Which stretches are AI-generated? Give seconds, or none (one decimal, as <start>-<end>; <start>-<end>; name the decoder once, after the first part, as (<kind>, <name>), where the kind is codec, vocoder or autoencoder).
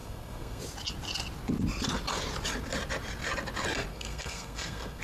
0.0-0.6 (codec, SNAC); 3.9-5.0